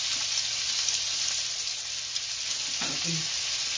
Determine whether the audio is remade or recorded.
recorded